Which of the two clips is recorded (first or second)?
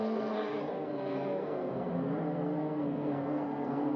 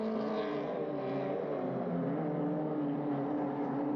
second